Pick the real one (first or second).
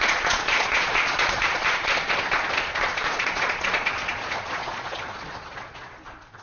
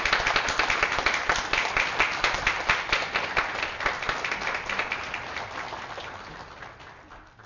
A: second